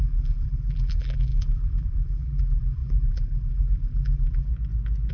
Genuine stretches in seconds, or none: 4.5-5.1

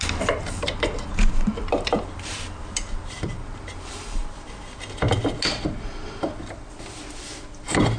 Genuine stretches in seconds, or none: 4.2-8.0

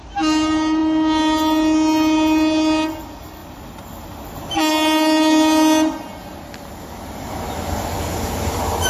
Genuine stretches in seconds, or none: 0.0-8.9

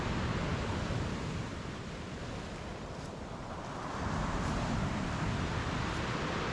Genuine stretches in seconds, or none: 0.0-0.5; 2.2-2.7; 5.9-6.5

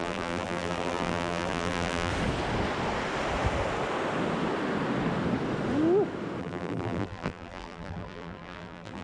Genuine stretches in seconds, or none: 2.1-6.4

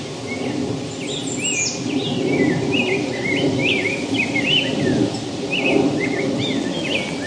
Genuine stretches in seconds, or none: 0.0-3.6; 4.6-7.3

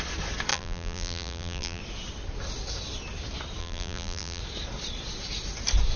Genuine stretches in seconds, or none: 0.0-0.5; 1.8-3.6; 4.4-6.0

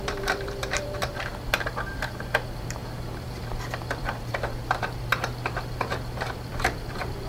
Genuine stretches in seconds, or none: 1.3-1.9